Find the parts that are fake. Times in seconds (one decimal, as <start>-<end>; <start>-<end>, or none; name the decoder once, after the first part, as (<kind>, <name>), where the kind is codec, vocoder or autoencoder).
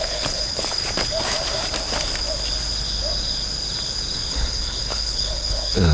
0.0-0.8 (codec, HILCodec); 4.3-5.9